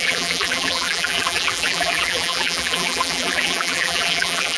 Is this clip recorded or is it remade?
remade